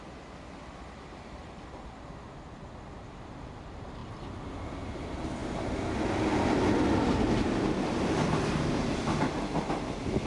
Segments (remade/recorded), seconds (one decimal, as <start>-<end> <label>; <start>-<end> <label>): 0.0-10.3 recorded